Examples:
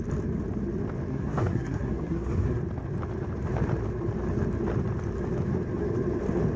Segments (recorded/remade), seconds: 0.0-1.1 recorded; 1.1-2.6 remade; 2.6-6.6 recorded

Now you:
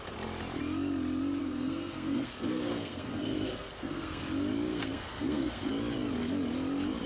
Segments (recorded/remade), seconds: 0.0-1.4 recorded; 1.4-4.2 remade; 4.2-4.7 recorded; 4.7-5.7 remade; 5.7-7.1 recorded